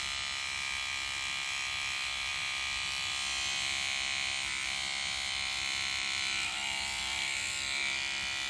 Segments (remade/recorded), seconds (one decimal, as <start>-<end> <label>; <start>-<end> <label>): 0.0-8.5 remade